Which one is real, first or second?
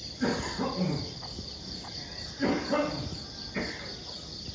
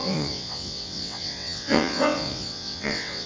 first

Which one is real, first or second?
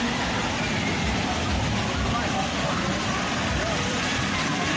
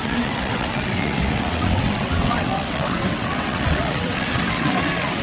first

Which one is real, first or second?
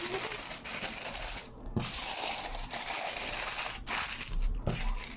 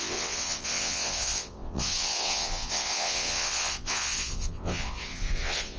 first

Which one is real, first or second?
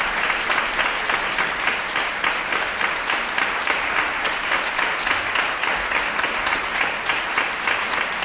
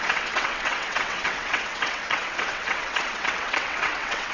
first